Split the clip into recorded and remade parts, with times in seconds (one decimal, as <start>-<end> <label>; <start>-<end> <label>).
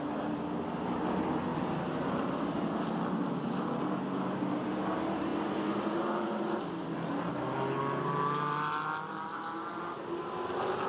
0.0-10.9 recorded